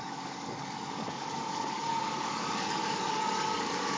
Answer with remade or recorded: remade